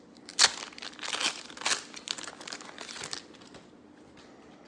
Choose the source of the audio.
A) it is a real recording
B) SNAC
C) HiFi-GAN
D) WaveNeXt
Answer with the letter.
A